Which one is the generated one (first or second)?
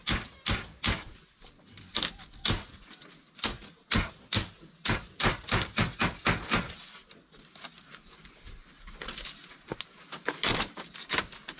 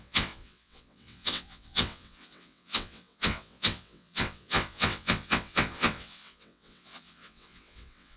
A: second